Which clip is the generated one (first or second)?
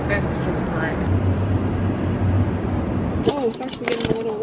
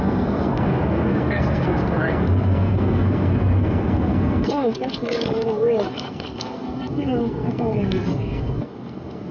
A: second